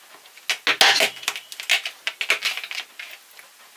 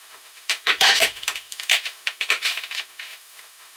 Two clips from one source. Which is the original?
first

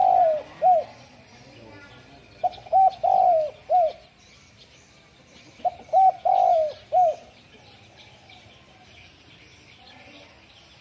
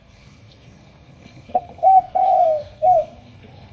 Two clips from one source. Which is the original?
first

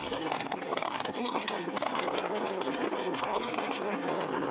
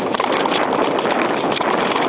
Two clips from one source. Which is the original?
second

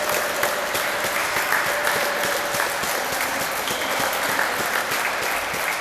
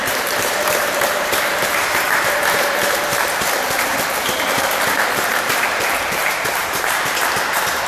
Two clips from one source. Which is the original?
first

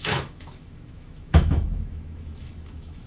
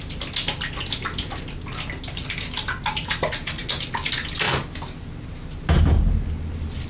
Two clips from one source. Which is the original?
second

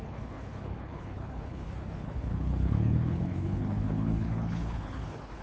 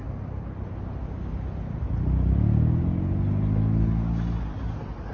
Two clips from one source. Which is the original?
second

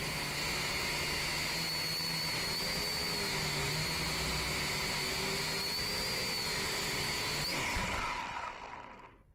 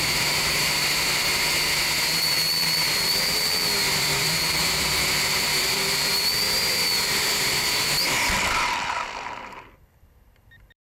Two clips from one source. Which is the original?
first